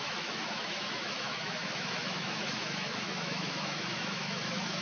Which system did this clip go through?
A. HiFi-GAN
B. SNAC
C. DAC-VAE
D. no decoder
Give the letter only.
C